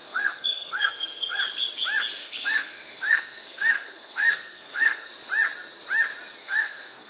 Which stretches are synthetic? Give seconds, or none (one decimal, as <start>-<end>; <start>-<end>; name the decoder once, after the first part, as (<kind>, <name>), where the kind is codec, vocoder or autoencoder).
0.0-1.4 (codec, SNAC); 2.2-5.1; 6.4-7.1